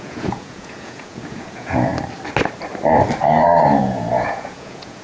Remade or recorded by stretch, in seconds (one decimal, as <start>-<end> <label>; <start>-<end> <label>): 0.0-1.9 remade; 1.9-3.8 recorded; 3.8-5.0 remade